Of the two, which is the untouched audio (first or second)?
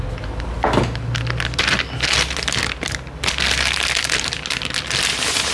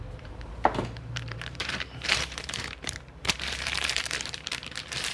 first